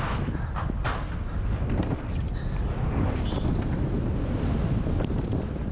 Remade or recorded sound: recorded